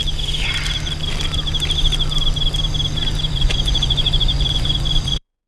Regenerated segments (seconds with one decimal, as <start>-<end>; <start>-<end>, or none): 3.3-5.5

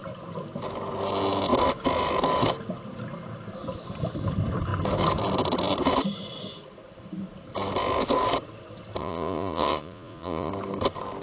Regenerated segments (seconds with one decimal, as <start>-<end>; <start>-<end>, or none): 9.0-10.5

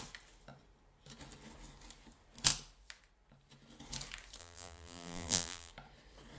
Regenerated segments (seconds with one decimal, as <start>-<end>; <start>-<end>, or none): 4.4-5.7

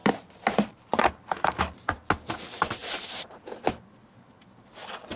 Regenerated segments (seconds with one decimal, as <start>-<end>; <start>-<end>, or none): 0.0-1.6; 2.8-3.4

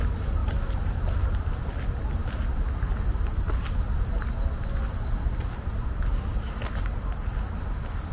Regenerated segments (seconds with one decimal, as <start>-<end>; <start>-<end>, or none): none